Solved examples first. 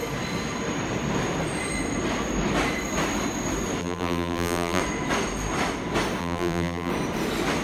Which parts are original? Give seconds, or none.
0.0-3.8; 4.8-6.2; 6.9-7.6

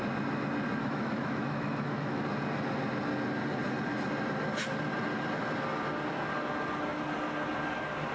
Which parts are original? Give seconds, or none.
0.0-0.8; 2.2-8.1

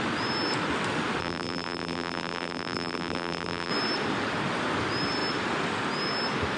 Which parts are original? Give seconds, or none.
0.0-1.2; 3.7-6.6

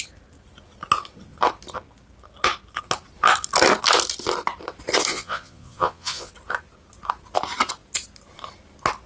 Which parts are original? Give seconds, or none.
0.0-5.1; 6.3-9.1

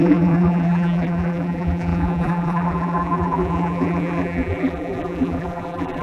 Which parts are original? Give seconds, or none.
none

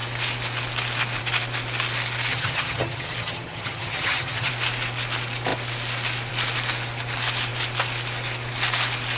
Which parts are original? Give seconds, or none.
0.0-2.3; 4.5-9.2